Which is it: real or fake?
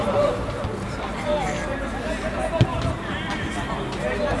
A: real